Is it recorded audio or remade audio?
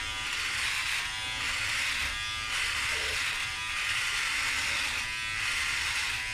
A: recorded